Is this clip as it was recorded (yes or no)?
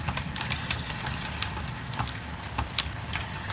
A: yes